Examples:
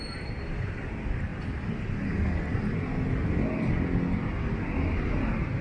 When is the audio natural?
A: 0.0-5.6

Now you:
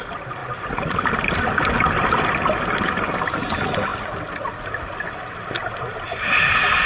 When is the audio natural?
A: 0.0-6.9

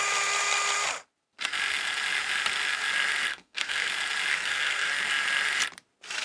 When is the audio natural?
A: 0.0-3.3; 3.9-4.3; 4.9-6.2

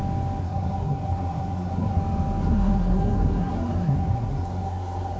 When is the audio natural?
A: 0.0-0.4; 2.0-2.4

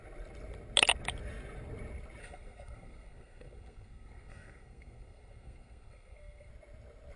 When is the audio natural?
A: 0.0-2.2; 6.5-7.2

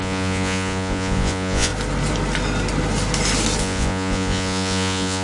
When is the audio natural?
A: 1.7-3.6